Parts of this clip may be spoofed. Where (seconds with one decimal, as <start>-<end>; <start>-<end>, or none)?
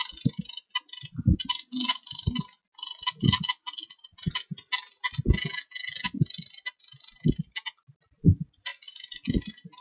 none